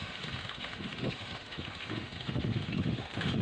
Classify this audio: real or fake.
fake